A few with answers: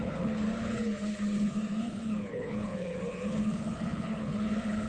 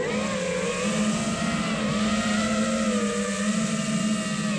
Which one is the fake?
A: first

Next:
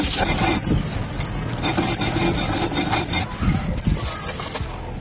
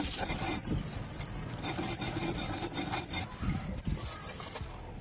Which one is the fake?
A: second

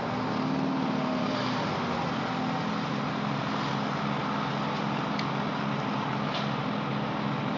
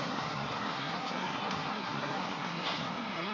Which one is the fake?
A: second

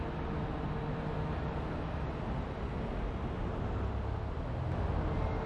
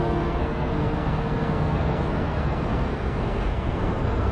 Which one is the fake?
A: second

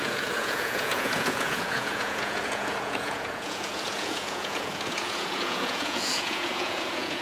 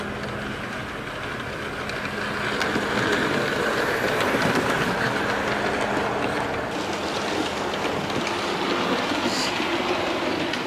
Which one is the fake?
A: first